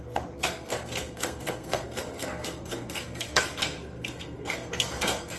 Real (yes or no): no